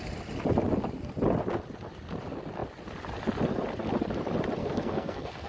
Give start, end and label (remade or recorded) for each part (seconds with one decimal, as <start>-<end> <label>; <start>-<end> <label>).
0.0-4.6 recorded; 4.6-5.5 remade